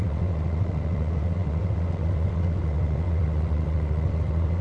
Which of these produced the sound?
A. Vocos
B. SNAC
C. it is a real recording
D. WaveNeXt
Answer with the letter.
D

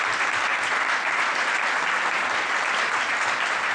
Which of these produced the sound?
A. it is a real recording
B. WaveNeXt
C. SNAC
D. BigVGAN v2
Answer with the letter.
A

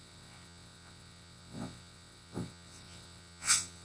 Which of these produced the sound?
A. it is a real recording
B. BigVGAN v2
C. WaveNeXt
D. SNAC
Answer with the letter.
C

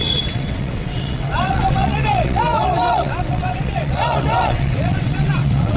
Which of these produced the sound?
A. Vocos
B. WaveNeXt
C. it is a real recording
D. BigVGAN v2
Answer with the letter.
B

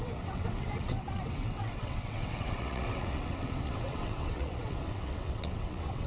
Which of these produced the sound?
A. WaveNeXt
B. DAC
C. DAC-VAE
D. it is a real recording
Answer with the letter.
A